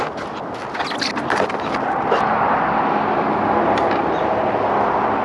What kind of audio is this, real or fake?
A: real